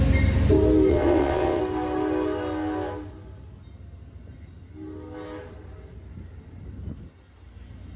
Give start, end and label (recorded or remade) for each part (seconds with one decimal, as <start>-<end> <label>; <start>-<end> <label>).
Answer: 0.0-0.9 recorded; 0.9-1.6 remade; 1.6-8.0 recorded